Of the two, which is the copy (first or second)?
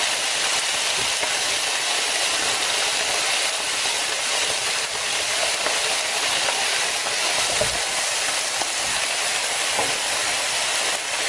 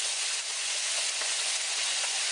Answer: second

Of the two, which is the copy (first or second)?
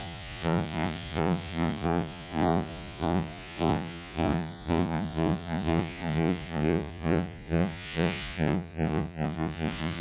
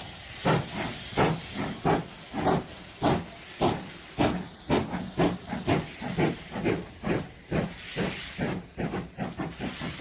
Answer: first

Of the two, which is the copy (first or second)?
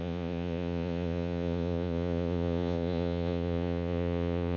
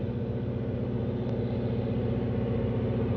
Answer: first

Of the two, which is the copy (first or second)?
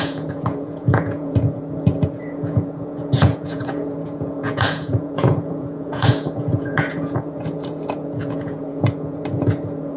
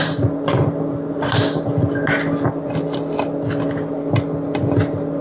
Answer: first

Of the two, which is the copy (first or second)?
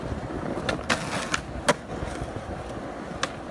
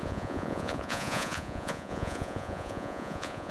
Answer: second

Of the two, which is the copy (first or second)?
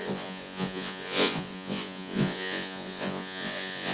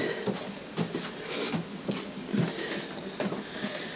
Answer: first